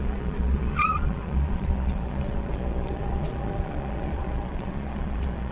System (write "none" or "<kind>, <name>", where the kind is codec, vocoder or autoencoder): vocoder, Vocos